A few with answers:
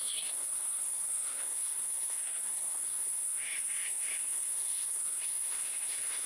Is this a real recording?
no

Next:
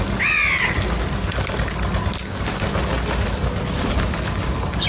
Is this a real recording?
yes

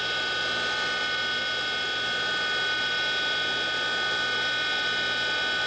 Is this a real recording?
yes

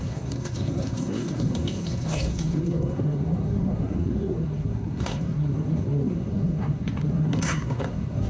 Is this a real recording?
no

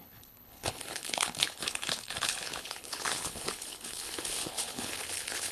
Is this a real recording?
no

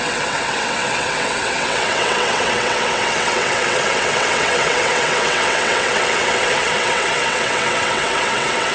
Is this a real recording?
no